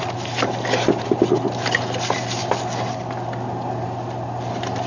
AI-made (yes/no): no